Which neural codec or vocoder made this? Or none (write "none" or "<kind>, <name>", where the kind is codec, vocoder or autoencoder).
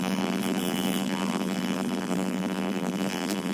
vocoder, BigVGAN v2